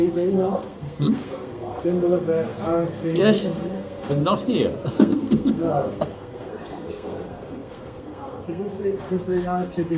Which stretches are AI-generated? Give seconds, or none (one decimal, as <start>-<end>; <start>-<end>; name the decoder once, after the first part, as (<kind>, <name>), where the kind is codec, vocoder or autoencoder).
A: 0.0-4.2 (codec, SNAC); 4.9-10.0